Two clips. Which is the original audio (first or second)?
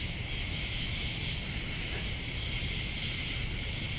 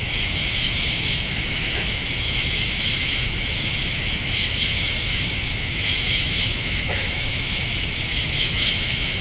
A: first